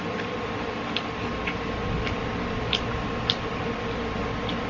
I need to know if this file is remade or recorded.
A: recorded